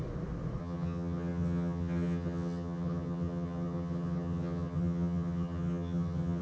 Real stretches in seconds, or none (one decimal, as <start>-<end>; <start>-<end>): 0.0-0.6